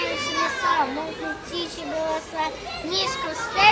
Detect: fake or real real